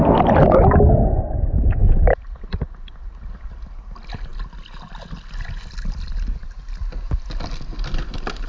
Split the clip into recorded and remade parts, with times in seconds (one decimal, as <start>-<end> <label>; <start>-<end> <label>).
0.0-1.8 recorded; 1.8-2.7 remade; 2.7-8.5 recorded